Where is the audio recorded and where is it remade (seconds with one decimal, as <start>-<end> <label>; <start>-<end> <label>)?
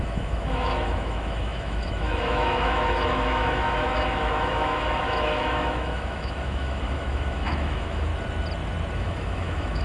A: 0.0-8.1 remade; 8.1-9.0 recorded; 9.0-9.8 remade